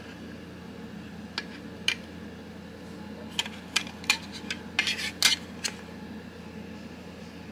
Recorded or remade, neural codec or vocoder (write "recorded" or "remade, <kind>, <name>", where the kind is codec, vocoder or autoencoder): recorded